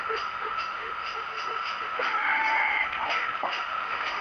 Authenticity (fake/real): fake